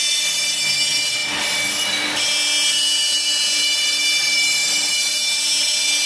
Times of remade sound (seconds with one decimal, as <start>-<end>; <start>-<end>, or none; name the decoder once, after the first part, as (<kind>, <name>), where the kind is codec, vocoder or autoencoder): 0.7-1.2 (vocoder, BigVGAN v2); 2.7-6.1

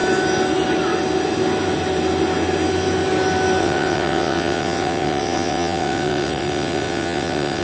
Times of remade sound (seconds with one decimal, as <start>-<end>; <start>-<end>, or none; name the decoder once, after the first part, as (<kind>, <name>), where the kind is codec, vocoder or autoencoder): 3.6-7.6 (vocoder, WaveNeXt)

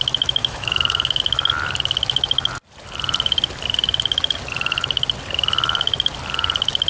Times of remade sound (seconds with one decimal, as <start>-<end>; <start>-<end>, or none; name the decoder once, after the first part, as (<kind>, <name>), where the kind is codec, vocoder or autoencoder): 0.4-1.2 (autoencoder, DAC-VAE)

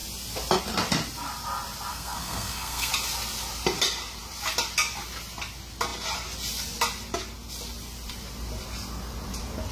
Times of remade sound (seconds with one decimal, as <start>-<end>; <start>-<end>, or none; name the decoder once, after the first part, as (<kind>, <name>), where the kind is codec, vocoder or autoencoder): 1.9-2.9 (codec, SNAC)

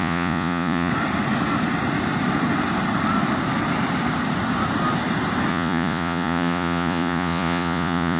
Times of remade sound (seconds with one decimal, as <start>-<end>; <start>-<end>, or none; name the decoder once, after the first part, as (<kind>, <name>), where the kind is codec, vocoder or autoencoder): 0.0-0.9 (vocoder, Vocos); 5.5-8.2

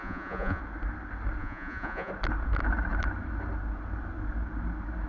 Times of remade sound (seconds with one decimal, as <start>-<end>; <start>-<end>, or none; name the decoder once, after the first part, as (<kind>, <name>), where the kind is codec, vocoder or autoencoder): 0.0-0.6 (vocoder, Vocos); 1.4-2.1

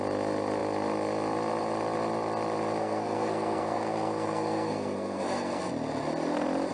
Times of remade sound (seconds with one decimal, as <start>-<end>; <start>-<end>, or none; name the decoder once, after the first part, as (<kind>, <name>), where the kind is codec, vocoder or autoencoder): 2.8-5.7 (codec, SNAC)

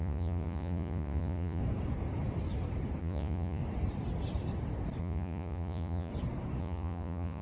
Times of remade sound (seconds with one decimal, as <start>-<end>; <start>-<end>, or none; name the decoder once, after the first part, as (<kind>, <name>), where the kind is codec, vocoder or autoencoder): 0.0-1.6 (vocoder, Vocos); 3.0-3.6; 5.0-6.1; 6.6-7.4